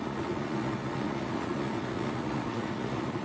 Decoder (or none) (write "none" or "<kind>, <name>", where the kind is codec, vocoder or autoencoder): vocoder, Vocos